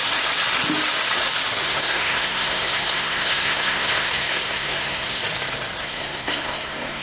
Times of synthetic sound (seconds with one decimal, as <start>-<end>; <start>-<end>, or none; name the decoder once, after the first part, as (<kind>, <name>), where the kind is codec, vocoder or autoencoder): 1.6-5.2 (codec, SNAC); 5.8-7.0